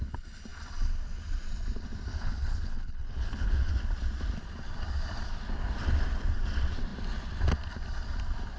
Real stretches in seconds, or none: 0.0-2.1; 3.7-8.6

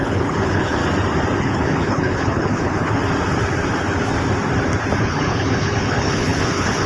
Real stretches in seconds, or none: 0.8-1.4; 3.0-5.0

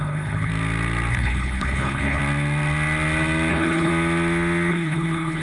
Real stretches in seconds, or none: 0.5-1.1; 2.2-3.5; 3.9-4.7

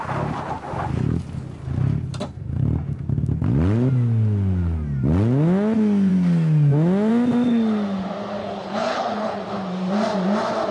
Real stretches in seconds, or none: 0.0-8.4; 9.4-10.7